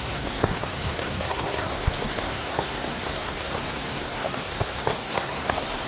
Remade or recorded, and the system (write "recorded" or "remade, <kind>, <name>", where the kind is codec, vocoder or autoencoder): remade, codec, SNAC